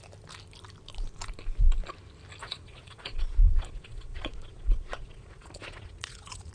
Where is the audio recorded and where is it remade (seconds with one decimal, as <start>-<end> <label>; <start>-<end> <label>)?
0.0-2.4 recorded; 2.4-6.5 remade